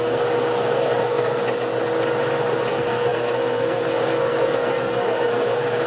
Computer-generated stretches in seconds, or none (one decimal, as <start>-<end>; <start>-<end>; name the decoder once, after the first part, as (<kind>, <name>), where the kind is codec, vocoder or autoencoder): 0.0-1.4 (codec, SNAC); 2.7-5.9